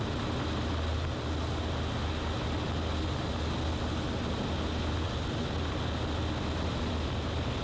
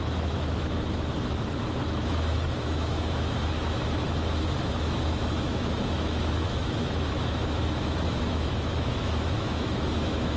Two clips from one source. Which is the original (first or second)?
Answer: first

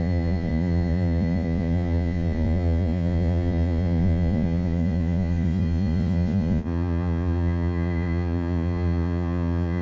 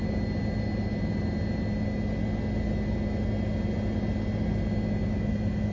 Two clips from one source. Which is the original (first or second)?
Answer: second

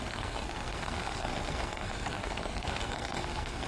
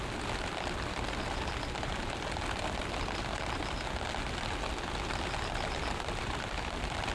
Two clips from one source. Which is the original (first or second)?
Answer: second